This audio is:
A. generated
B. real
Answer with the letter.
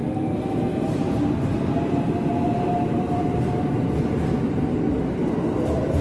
B